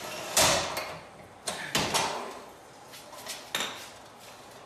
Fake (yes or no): no